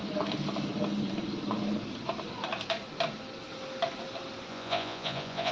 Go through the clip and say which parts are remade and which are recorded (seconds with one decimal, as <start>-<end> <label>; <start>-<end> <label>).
0.0-4.5 recorded; 4.5-5.5 remade